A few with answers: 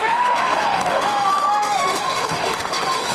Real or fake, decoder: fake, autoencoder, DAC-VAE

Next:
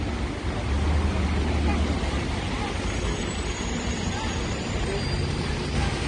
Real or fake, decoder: real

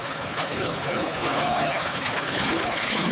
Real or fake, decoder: fake, codec, HILCodec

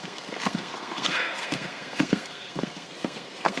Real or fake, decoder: fake, codec, SNAC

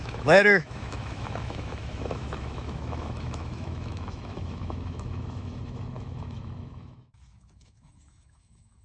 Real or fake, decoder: fake, autoencoder, DAC-VAE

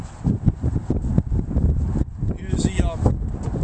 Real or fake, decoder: real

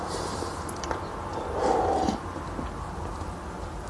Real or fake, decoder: real